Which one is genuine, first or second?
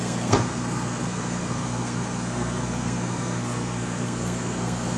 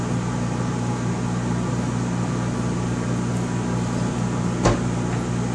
second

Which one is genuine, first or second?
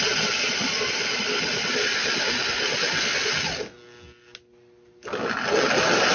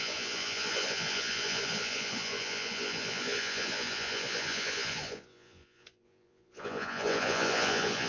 first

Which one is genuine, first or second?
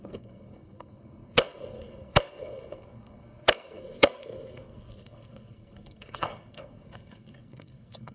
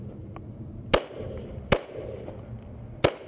second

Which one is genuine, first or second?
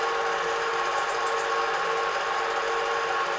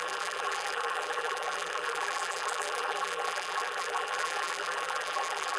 first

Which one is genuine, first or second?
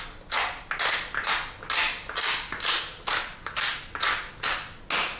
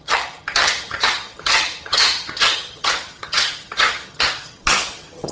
first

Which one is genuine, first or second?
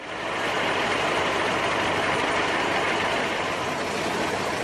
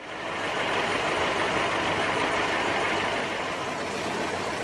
second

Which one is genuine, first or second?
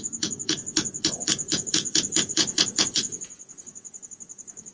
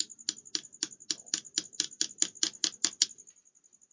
second